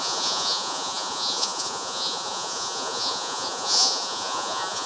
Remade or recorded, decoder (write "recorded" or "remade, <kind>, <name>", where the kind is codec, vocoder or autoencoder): remade, vocoder, Vocos